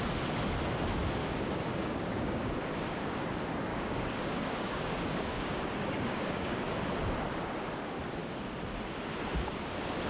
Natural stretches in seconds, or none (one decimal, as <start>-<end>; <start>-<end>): 0.0-1.2; 2.5-3.7; 6.5-10.1